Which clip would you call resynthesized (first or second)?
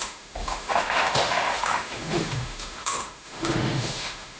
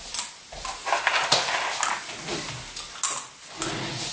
first